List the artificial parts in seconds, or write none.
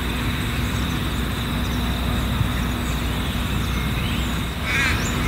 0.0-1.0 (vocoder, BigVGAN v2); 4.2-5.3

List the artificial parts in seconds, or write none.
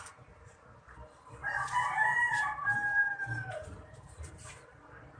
1.4-4.5 (vocoder, BigVGAN v2)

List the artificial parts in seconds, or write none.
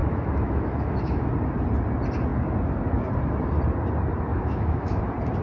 0.0-1.3 (autoencoder, DAC-VAE); 4.3-5.0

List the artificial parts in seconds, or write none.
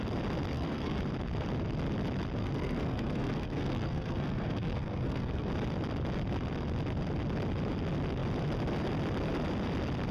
0.5-1.0 (codec, SNAC); 2.4-5.5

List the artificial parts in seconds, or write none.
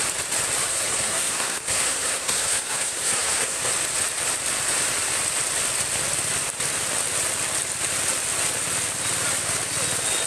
0.7-3.7 (codec, SNAC)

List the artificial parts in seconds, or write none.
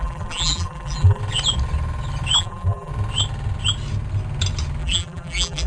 0.0-1.2 (vocoder, BigVGAN v2); 2.4-2.9; 4.8-5.7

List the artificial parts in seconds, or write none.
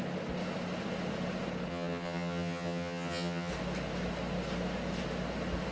1.7-3.5 (vocoder, HiFi-GAN)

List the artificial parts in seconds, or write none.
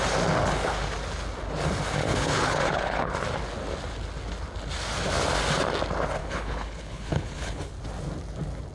2.1-3.1 (codec, HILCodec); 6.2-7.7